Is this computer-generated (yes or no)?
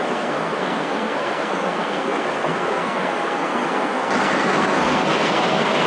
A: yes